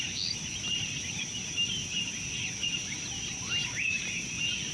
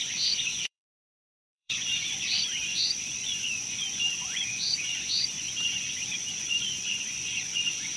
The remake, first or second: second